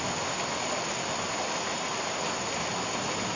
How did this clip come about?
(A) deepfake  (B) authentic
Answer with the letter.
B